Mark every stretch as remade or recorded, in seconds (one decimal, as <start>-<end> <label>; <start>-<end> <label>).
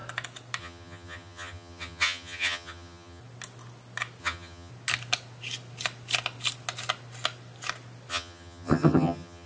0.0-0.6 recorded; 0.6-3.2 remade; 3.2-4.2 recorded; 4.2-4.7 remade; 4.7-8.1 recorded; 8.1-9.5 remade